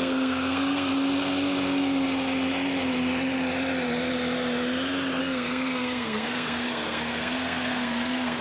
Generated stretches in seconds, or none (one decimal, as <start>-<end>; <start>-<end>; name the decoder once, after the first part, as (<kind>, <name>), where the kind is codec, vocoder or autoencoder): 0.0-0.9 (codec, SNAC); 5.2-8.4